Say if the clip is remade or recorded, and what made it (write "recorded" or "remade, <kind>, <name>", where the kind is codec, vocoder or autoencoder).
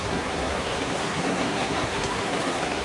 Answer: remade, codec, SNAC